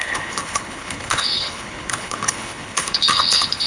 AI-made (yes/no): yes